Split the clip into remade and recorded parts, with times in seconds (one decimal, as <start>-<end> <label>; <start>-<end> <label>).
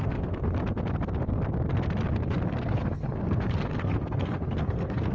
0.0-0.4 remade; 0.4-2.6 recorded; 2.6-5.1 remade